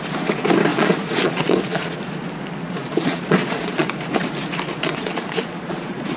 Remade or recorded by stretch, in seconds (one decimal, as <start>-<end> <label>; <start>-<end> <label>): 0.0-0.7 recorded; 0.7-2.0 remade; 2.0-2.6 recorded; 2.6-3.9 remade; 3.9-4.7 recorded; 4.7-6.2 remade